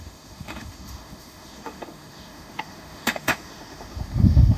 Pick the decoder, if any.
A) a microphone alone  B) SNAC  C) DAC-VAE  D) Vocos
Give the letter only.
C